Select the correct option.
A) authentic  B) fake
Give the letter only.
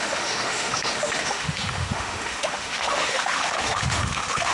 B